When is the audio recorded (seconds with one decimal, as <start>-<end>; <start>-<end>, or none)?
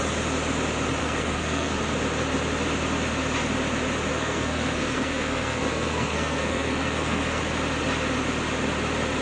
0.0-1.0; 1.8-4.1; 7.4-9.2